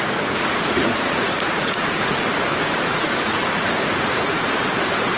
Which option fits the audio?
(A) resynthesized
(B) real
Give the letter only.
A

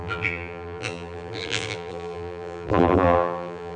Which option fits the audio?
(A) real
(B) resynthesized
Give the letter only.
B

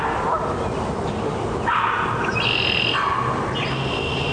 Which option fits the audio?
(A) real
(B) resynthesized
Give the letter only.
A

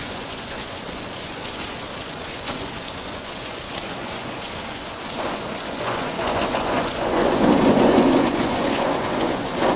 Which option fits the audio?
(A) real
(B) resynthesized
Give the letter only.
B